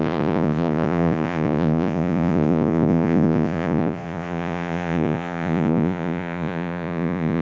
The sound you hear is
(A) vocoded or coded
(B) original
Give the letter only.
A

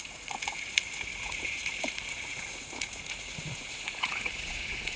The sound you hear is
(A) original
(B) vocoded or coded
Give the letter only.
B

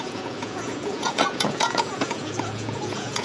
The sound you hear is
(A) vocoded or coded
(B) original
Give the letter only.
A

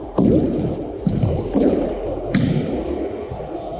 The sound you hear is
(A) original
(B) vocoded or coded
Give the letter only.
A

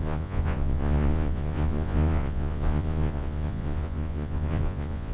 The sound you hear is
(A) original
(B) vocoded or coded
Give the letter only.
B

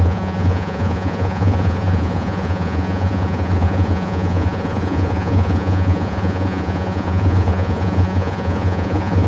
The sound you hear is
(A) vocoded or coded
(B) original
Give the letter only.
A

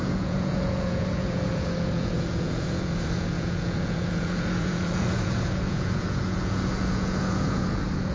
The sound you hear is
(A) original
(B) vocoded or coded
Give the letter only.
B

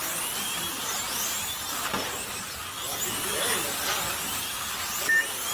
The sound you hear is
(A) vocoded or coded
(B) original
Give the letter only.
B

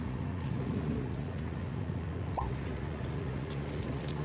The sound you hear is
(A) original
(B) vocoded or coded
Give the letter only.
B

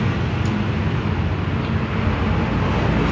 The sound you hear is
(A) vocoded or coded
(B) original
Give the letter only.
B